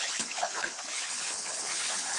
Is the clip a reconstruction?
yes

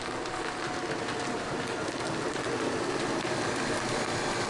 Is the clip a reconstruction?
no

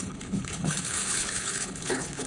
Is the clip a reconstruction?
yes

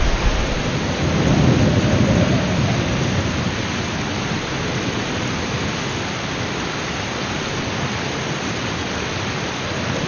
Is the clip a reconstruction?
no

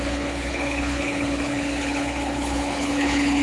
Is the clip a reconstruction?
yes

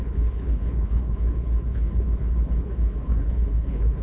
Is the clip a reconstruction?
yes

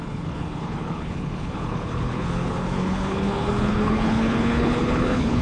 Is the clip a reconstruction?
yes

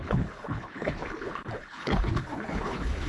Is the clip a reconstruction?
yes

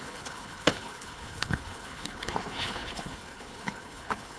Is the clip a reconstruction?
yes